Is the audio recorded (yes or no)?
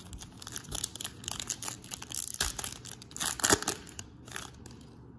yes